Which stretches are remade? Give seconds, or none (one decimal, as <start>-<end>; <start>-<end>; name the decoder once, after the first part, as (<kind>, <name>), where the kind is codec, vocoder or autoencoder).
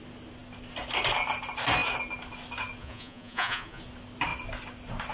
2.8-3.8 (vocoder, Vocos)